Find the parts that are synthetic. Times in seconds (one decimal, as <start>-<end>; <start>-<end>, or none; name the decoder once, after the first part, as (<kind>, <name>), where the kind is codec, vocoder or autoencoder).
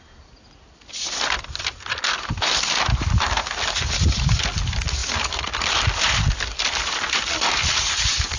5.0-7.9 (vocoder, BigVGAN v2)